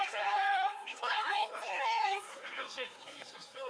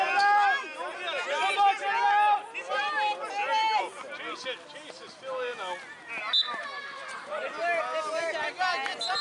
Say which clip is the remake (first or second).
first